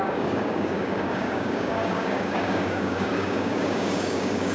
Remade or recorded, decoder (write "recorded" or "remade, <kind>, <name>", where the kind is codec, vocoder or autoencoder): remade, codec, DAC